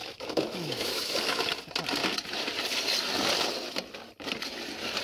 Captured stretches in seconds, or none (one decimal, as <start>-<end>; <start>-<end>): 1.4-5.0